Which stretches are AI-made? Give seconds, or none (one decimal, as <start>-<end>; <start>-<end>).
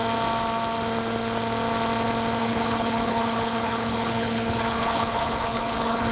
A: 2.4-6.1